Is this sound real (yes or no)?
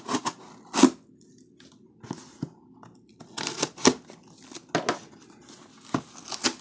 yes